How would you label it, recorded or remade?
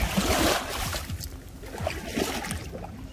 recorded